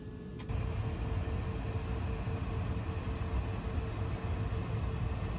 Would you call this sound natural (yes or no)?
yes